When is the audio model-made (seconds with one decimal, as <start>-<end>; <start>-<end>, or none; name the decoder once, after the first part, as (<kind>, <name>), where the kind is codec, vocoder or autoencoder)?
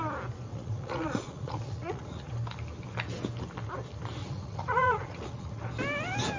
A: 0.5-2.3 (vocoder, Vocos); 4.2-5.6